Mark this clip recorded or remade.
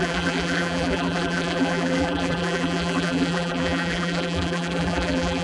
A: remade